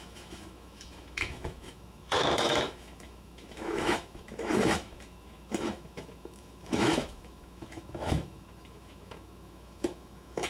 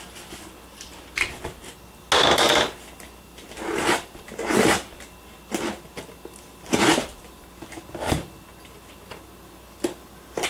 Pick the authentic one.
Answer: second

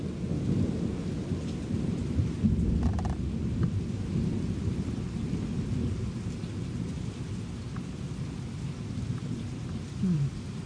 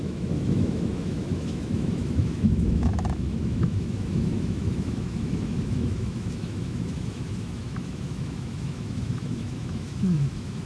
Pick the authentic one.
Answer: first